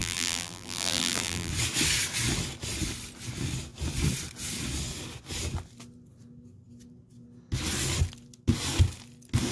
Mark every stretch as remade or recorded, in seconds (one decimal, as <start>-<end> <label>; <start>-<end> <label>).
0.0-1.5 remade; 1.5-9.5 recorded